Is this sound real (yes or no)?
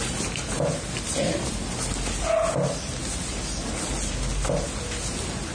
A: yes